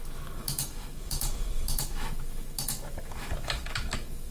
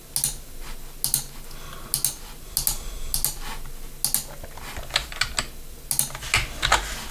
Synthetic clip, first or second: first